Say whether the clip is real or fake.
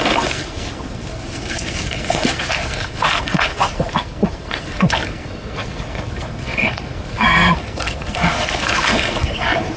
fake